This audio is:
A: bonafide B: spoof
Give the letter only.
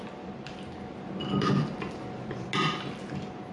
A